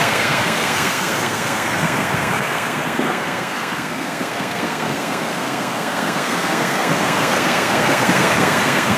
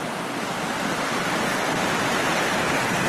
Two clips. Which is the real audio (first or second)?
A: second